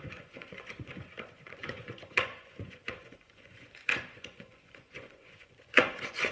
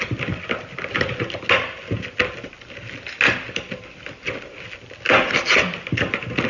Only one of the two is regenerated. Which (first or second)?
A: first